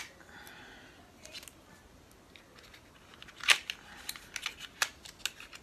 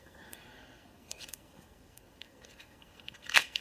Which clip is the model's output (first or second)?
second